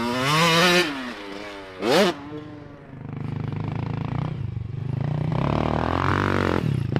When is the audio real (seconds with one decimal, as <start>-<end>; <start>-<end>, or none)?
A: 0.0-3.5; 4.4-5.3; 6.1-7.0